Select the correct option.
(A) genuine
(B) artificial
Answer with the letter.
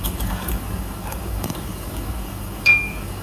B